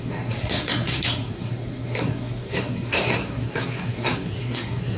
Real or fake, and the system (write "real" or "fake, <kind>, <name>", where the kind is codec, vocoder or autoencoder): fake, codec, SNAC